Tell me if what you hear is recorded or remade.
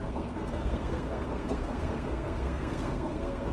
remade